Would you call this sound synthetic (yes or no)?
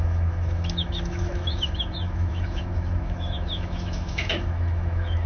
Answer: yes